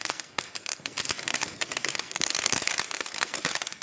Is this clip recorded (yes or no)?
no